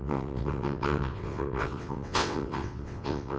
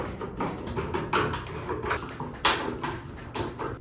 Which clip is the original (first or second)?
second